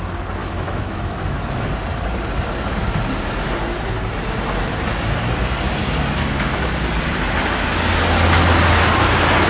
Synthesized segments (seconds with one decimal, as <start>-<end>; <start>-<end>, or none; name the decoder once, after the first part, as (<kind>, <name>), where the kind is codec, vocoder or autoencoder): 0.4-1.7 (autoencoder, DAC-VAE)